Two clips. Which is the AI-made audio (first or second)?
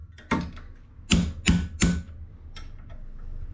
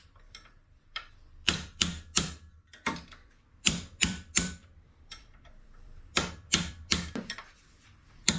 second